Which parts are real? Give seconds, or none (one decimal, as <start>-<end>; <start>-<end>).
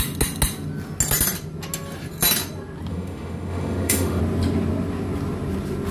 0.0-2.9; 4.2-5.9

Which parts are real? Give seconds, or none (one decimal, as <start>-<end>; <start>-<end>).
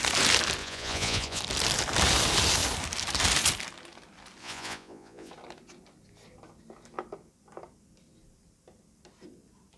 0.0-0.6; 1.4-4.4; 5.3-9.8